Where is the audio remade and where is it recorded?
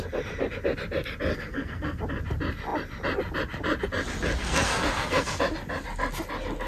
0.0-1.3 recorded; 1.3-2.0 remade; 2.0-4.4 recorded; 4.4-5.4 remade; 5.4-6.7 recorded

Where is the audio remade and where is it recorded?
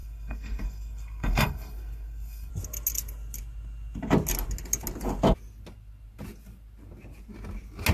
0.0-2.5 remade; 2.5-7.9 recorded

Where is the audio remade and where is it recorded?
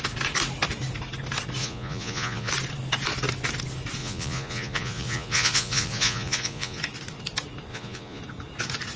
0.0-1.6 recorded; 1.6-2.5 remade; 2.5-4.0 recorded; 4.0-6.8 remade; 6.8-7.7 recorded; 7.7-8.2 remade; 8.2-9.0 recorded